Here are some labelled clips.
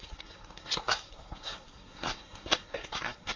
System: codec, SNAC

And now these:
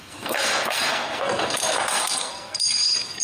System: codec, SNAC